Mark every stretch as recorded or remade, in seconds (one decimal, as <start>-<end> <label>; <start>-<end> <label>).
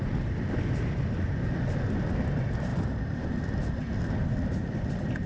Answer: 0.0-5.3 remade